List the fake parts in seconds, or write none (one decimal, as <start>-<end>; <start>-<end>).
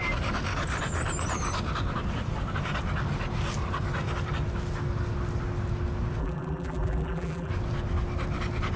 6.2-7.5